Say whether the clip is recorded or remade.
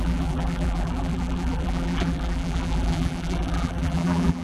remade